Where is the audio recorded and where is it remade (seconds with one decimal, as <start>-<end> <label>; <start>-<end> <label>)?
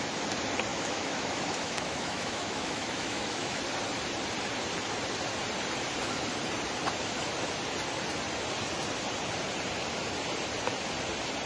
0.0-0.7 recorded; 0.7-3.6 remade; 3.6-11.5 recorded